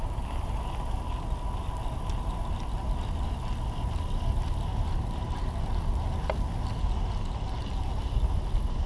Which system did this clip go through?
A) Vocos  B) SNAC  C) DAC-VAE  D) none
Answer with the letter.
D